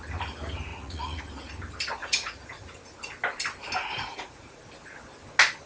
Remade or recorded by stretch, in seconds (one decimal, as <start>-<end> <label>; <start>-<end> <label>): 0.0-0.7 recorded; 0.7-1.2 remade; 1.2-2.0 recorded; 2.0-2.8 remade; 2.8-3.8 recorded; 3.8-4.6 remade; 4.6-5.7 recorded